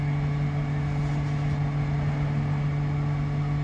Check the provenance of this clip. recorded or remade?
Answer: recorded